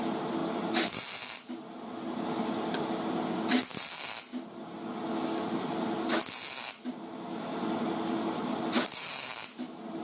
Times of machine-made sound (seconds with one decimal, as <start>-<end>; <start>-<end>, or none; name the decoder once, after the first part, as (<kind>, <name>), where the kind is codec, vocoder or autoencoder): none